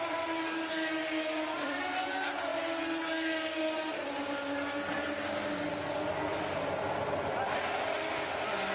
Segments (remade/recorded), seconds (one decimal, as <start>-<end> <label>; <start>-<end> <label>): 0.0-8.7 recorded